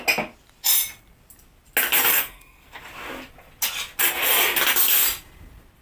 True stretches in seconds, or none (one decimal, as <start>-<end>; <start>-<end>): 0.0-2.1; 2.8-5.8